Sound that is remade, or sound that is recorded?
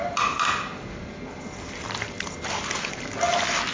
recorded